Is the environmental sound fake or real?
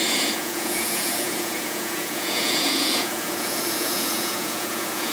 fake